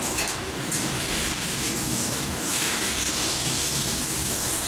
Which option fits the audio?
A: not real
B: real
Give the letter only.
A